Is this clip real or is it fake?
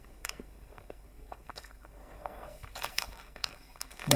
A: fake